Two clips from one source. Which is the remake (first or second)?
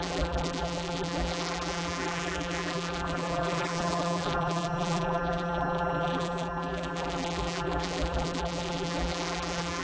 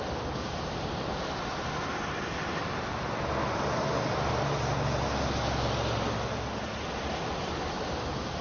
first